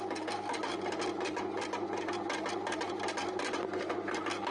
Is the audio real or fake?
real